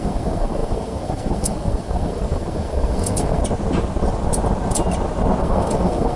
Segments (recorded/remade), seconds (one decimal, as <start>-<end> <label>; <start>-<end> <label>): 0.0-3.4 remade; 3.4-5.4 recorded; 5.4-6.2 remade